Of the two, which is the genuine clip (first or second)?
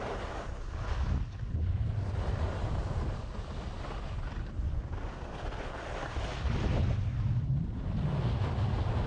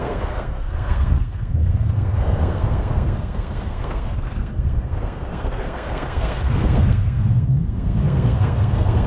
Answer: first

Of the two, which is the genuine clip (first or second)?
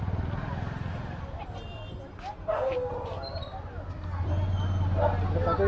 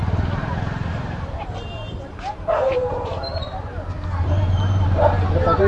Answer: first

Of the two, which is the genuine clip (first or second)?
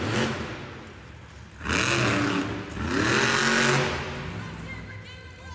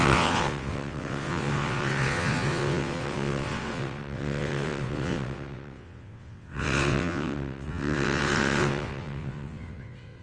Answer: first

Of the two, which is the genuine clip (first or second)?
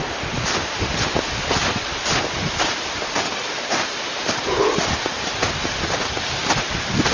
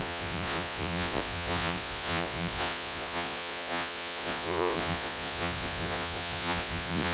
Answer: first